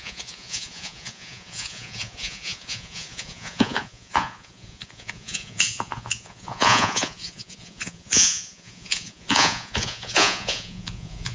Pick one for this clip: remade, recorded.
remade